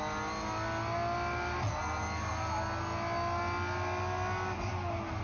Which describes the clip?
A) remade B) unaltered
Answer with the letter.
B